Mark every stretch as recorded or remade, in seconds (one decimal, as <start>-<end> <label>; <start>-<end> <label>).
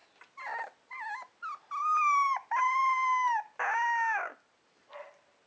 0.0-5.5 recorded